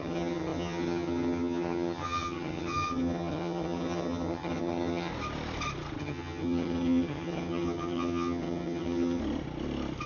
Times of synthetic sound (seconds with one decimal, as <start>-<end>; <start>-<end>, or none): 0.0-5.1; 6.0-9.2